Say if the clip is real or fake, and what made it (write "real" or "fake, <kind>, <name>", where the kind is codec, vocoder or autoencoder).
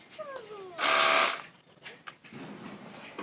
real